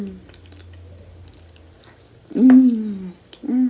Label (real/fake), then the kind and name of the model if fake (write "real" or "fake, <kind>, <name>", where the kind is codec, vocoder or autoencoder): real